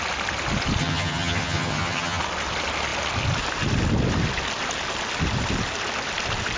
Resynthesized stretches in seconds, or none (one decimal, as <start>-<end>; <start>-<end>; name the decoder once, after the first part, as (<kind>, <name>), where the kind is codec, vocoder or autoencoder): 0.8-2.2 (vocoder, HiFi-GAN)